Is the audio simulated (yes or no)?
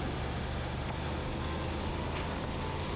no